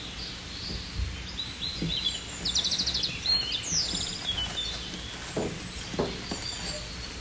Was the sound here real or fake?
real